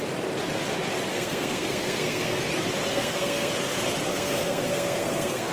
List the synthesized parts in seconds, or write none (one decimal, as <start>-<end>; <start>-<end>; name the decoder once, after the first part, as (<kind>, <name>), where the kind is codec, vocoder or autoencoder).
1.1-2.4 (codec, SNAC); 2.9-3.5; 4.1-5.5